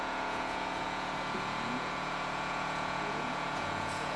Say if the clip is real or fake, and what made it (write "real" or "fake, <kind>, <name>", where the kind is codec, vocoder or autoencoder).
fake, vocoder, Vocos